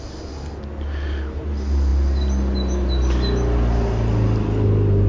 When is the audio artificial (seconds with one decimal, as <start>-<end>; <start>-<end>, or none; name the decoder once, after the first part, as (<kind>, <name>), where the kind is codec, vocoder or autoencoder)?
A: none